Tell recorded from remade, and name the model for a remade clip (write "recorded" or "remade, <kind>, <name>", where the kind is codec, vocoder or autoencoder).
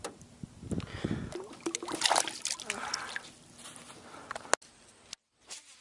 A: recorded